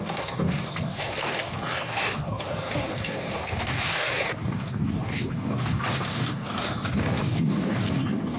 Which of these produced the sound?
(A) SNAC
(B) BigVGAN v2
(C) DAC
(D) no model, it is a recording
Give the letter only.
C